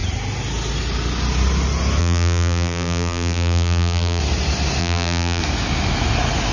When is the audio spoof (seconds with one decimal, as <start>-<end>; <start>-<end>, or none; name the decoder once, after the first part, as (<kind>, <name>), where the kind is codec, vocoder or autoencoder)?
2.0-4.2 (vocoder, BigVGAN v2); 4.8-5.4